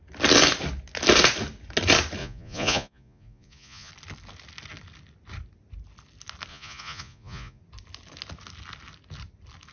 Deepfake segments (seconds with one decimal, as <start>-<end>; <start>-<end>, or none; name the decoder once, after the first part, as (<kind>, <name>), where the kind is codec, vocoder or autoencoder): 2.2-3.9 (vocoder, Vocos); 6.5-7.6